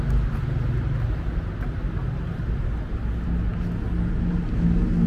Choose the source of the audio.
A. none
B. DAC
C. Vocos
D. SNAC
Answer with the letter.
A